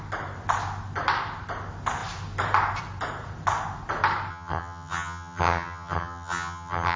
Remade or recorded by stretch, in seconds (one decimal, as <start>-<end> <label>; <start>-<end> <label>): 0.0-4.3 recorded; 4.3-7.0 remade